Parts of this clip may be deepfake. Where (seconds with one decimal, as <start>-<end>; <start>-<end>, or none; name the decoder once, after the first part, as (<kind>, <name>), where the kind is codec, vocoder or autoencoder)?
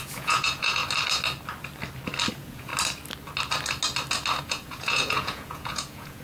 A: 0.0-0.8 (vocoder, Vocos); 2.3-2.7; 4.4-6.2